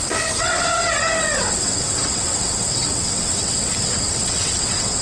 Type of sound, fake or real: fake